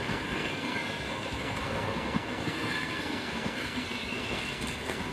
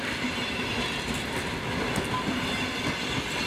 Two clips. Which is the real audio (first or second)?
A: second